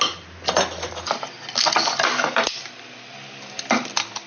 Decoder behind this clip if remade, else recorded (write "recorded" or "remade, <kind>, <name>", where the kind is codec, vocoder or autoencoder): recorded